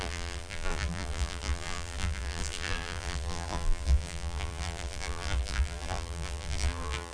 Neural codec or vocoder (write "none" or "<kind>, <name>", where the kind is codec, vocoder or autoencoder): vocoder, BigVGAN v2